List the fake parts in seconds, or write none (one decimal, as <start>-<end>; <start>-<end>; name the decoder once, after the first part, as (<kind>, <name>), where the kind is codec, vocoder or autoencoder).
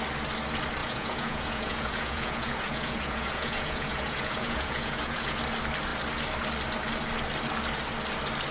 0.8-5.4 (vocoder, Vocos)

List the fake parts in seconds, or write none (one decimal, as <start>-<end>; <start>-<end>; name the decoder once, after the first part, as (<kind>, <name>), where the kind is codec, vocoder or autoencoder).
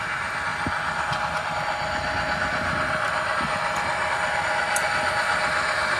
none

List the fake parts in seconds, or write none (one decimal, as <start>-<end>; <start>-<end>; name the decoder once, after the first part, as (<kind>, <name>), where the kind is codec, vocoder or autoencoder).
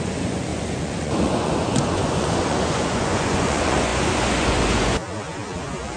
0.0-6.0 (vocoder, Vocos)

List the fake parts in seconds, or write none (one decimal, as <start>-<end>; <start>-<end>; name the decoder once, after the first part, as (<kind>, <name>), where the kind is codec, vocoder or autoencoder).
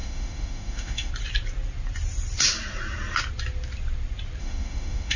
0.0-1.1 (autoencoder, DAC-VAE); 4.4-5.2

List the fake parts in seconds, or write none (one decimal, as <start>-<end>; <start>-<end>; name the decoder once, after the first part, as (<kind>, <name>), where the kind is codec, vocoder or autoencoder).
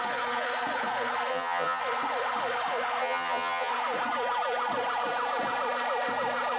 1.3-1.8 (vocoder, HiFi-GAN); 3.0-3.7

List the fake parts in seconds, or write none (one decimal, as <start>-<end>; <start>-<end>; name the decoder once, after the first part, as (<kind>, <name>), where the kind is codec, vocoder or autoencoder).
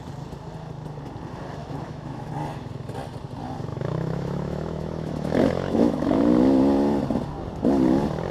1.6-2.3 (autoencoder, DAC-VAE); 3.7-6.2